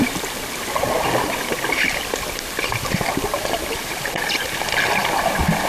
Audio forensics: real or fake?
real